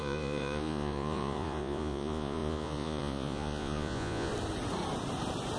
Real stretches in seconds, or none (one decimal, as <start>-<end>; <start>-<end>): 4.3-5.6